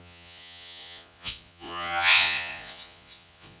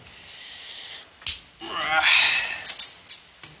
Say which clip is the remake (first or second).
first